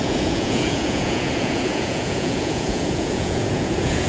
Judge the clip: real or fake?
fake